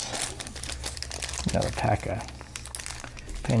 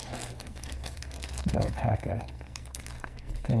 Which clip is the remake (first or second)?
second